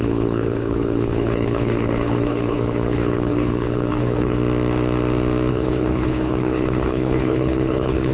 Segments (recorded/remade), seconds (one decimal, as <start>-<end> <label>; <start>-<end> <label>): 0.0-4.4 remade; 4.4-5.5 recorded; 5.5-8.1 remade